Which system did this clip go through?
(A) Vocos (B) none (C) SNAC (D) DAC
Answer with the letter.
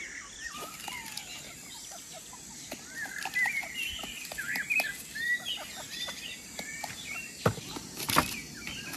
B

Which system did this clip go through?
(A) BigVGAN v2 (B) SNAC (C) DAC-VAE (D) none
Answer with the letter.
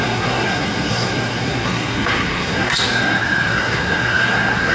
B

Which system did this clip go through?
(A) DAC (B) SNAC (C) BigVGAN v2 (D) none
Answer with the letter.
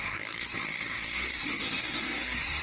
B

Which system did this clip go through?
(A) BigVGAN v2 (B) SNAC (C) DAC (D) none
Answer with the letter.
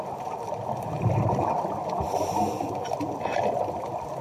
D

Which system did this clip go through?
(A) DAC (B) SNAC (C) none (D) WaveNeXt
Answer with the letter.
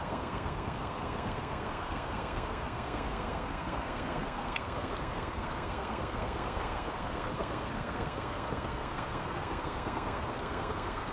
B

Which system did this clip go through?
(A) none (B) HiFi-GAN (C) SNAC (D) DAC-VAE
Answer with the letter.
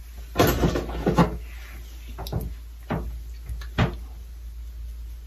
A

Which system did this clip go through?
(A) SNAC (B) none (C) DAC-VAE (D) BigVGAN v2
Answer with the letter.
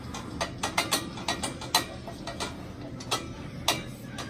B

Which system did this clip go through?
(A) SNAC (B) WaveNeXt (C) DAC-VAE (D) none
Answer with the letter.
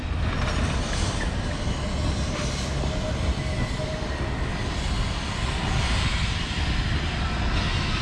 D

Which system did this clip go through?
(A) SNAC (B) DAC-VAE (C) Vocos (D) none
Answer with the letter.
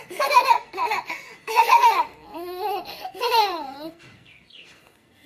A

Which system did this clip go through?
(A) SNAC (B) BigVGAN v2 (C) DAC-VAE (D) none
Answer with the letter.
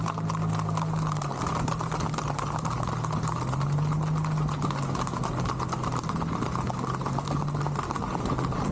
D